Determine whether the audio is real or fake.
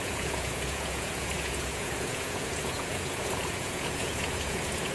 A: fake